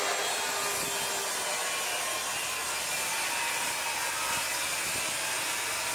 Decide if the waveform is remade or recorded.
recorded